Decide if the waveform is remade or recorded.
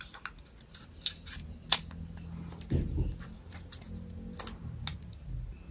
recorded